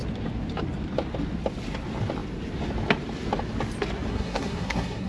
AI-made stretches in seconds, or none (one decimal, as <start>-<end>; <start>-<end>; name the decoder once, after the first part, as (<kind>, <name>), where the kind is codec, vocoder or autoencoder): 4.1-5.1 (codec, SNAC)